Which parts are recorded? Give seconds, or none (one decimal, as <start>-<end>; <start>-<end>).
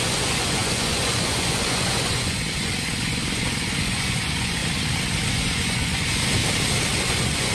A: 4.6-5.3; 6.4-7.0